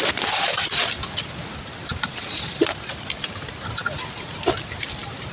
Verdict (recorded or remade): recorded